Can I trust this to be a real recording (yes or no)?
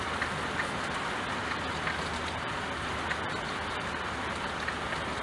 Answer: yes